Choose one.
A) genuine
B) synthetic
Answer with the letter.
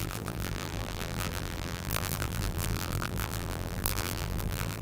B